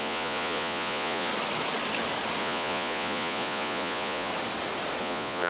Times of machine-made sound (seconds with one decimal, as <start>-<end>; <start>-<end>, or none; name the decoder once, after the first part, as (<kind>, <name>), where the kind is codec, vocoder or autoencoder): 0.0-1.3 (vocoder, Vocos); 2.4-4.3; 5.0-5.5